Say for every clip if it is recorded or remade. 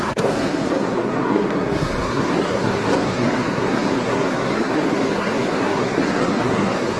remade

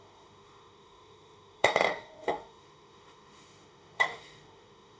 remade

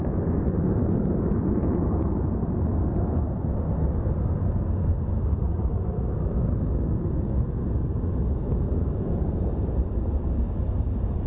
recorded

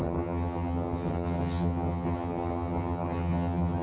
remade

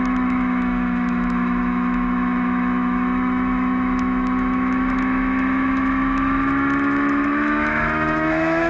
remade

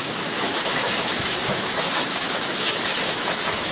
remade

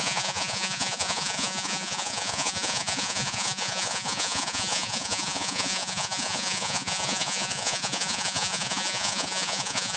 remade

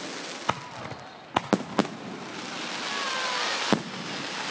recorded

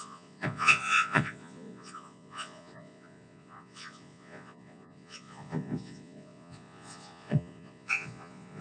remade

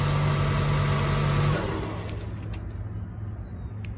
recorded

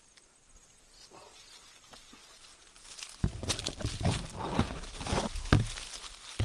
recorded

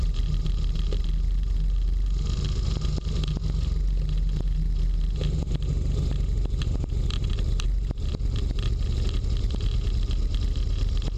recorded